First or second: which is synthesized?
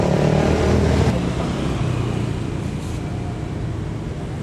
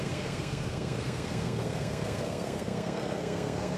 second